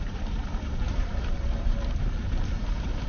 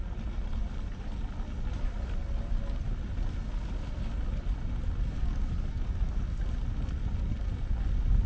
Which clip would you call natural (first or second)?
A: second